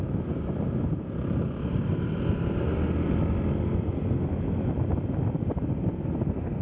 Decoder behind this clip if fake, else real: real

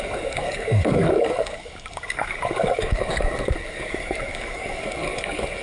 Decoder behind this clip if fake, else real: fake, codec, DAC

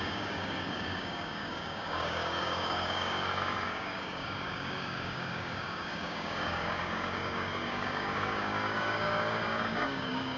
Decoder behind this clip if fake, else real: fake, codec, DAC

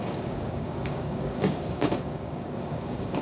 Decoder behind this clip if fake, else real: fake, codec, DAC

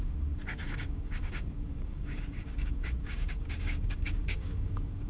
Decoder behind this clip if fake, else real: fake, codec, DAC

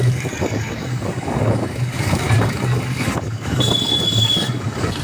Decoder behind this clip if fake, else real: fake, codec, DAC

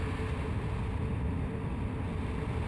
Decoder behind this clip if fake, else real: real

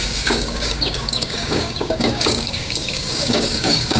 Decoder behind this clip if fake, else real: fake, codec, DAC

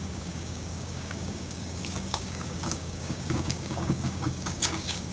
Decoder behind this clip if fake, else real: fake, codec, DAC